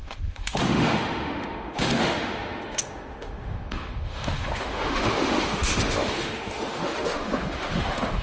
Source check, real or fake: fake